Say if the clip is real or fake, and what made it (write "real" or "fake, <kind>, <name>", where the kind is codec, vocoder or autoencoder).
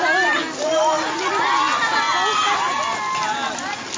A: real